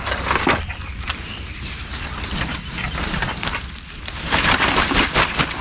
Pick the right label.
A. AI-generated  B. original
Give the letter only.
A